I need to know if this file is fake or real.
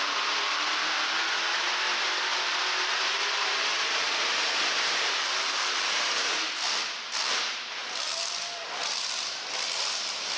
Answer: real